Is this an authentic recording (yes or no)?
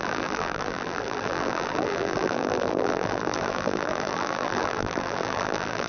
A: no